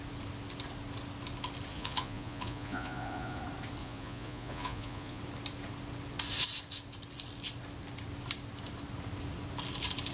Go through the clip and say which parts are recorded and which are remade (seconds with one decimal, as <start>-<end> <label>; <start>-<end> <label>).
0.0-1.7 recorded; 1.7-3.4 remade; 3.4-3.8 recorded; 3.8-5.2 remade; 5.2-10.1 recorded